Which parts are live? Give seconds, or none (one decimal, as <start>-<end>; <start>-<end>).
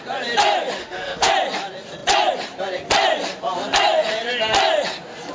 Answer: 0.0-0.8; 1.3-5.3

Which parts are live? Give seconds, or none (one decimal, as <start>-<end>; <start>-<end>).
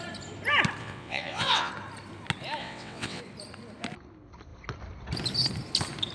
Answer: 0.0-0.8; 1.7-2.6; 3.2-6.1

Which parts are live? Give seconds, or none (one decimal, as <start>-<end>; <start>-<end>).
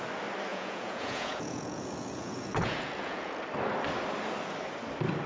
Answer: 0.0-0.5; 3.4-5.3